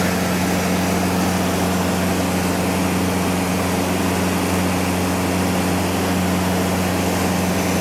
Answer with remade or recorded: recorded